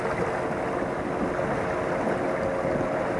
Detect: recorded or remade recorded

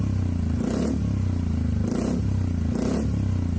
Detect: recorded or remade recorded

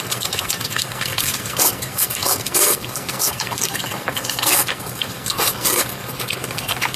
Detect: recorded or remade remade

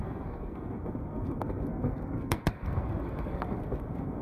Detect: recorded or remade remade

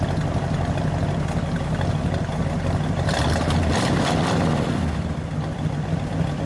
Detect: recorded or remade recorded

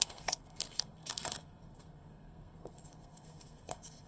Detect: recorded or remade remade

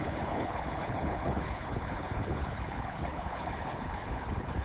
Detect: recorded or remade remade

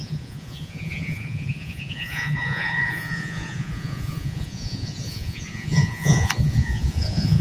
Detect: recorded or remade remade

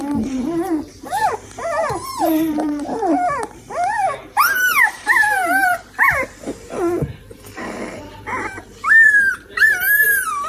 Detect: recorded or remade remade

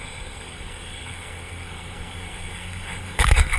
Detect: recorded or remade remade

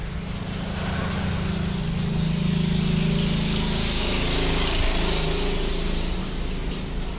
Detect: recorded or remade recorded